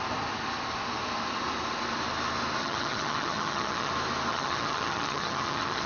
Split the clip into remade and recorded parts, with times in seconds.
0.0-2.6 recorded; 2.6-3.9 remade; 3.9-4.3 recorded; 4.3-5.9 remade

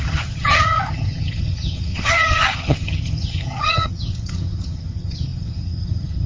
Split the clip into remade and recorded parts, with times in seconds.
0.0-6.3 remade

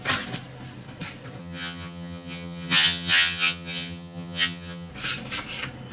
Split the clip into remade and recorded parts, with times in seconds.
0.0-1.4 recorded; 1.4-4.9 remade; 4.9-5.9 recorded

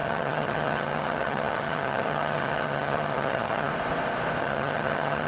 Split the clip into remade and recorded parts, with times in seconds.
0.0-3.7 remade; 3.7-4.4 recorded; 4.4-5.3 remade

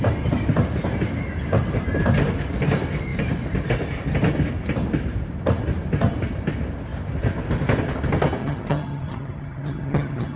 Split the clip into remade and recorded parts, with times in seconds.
0.0-8.4 recorded; 8.4-10.4 remade